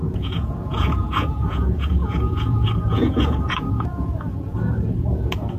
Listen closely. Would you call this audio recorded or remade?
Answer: remade